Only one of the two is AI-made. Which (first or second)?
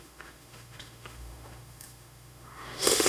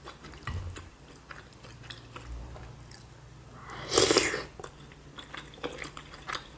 first